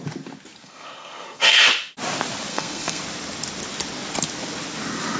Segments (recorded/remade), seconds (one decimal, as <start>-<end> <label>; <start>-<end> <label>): 0.0-0.6 recorded; 0.6-1.6 remade; 1.6-2.5 recorded; 2.5-3.0 remade; 3.0-5.2 recorded